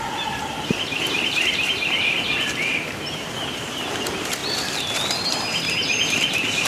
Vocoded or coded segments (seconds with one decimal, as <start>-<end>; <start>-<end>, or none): 0.0-4.4; 5.3-6.7